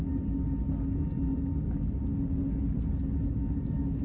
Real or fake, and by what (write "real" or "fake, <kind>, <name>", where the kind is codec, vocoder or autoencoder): real